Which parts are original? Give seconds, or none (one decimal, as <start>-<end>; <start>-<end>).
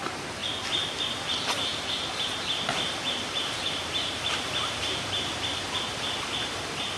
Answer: 0.4-1.0